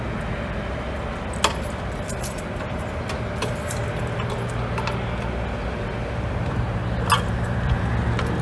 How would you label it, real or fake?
real